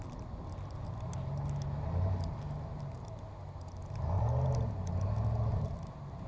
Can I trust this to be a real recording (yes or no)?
yes